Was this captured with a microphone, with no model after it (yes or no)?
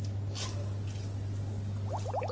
yes